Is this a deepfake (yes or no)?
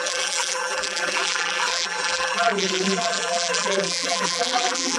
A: yes